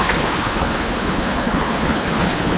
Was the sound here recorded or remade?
remade